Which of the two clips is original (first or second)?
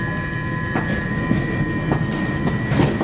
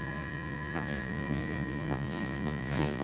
first